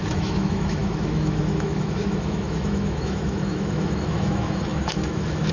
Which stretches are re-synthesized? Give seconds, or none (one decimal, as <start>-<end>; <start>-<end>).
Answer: 0.0-5.5